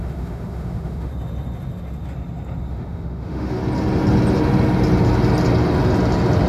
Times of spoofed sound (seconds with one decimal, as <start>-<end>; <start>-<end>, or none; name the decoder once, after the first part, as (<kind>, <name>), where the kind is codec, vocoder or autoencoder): 0.0-1.1 (autoencoder, DAC-VAE); 2.7-3.6